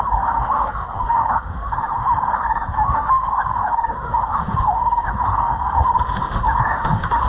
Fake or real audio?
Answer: fake